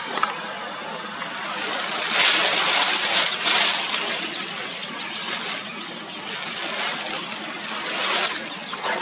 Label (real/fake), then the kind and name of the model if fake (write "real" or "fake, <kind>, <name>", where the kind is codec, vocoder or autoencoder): real